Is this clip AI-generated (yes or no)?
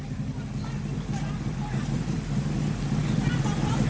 no